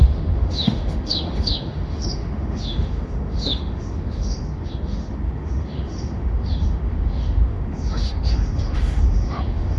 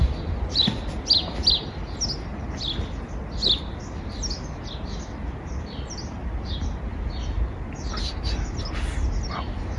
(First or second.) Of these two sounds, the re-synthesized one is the first